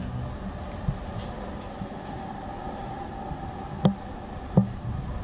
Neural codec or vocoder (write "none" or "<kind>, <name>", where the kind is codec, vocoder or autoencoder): none